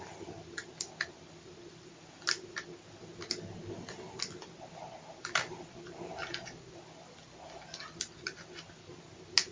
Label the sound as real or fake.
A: real